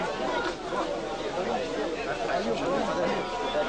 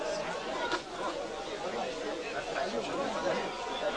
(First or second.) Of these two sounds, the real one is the first